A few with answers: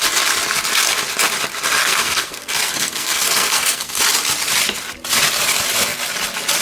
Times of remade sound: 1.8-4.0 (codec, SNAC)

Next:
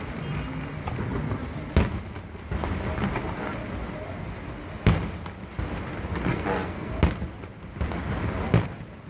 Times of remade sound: 6.3-6.9 (codec, SNAC)